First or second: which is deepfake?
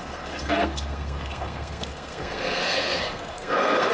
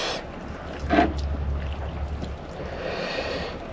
first